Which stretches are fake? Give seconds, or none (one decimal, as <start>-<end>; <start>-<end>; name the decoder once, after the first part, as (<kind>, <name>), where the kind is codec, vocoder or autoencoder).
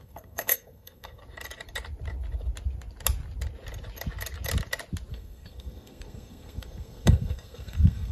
0.0-1.2 (codec, SNAC); 5.1-8.1